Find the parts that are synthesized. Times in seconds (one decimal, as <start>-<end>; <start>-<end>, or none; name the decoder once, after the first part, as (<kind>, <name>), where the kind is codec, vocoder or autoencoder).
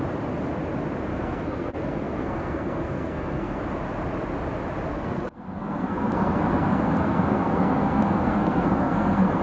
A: 1.1-3.6 (codec, SNAC); 4.9-9.4